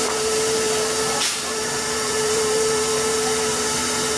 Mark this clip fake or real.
fake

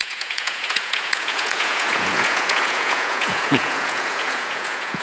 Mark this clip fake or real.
fake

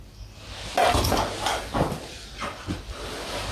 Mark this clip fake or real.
real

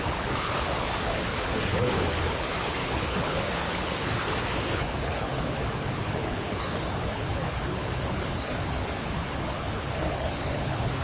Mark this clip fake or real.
fake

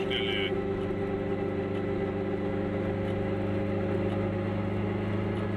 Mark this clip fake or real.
real